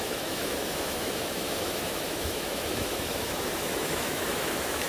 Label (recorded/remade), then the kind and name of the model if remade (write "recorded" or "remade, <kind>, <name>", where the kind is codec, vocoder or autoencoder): remade, autoencoder, DAC-VAE